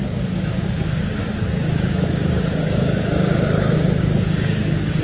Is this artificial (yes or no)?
yes